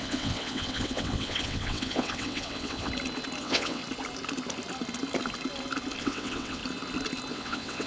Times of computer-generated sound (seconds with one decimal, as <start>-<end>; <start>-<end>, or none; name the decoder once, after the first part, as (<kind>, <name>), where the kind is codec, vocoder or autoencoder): 0.0-2.9 (vocoder, WaveNeXt); 3.4-3.8; 6.0-6.6; 7.3-7.9